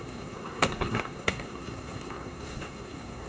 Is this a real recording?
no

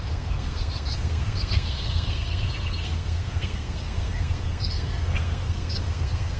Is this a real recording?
no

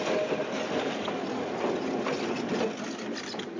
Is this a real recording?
yes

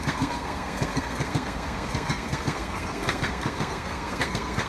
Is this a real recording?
no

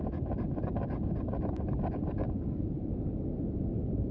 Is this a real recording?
yes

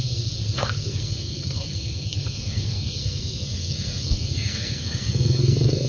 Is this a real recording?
no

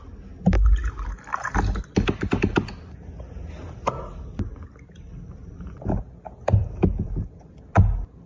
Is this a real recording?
yes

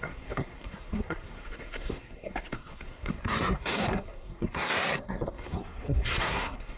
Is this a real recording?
no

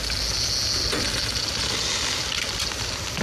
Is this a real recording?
yes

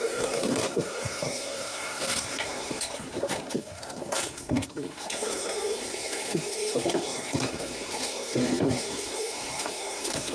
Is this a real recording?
no